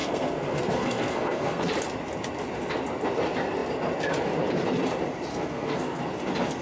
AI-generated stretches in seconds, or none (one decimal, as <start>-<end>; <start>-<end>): 0.0-1.7; 5.3-6.0

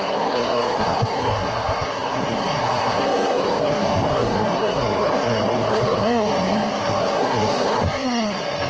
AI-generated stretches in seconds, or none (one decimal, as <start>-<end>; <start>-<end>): 0.0-8.7

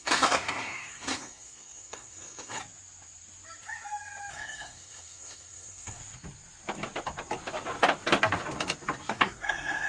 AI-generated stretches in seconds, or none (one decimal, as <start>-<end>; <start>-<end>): 0.0-2.6; 4.3-6.0; 9.1-9.9

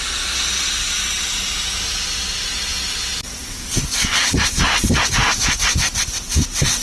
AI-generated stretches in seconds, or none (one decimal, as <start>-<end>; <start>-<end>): none